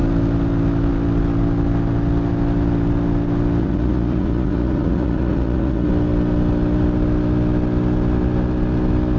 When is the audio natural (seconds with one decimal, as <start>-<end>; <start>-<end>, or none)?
0.0-3.6; 5.9-9.2